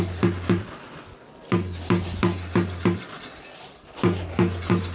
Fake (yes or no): no